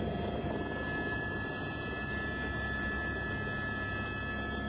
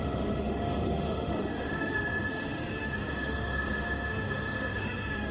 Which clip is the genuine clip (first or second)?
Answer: first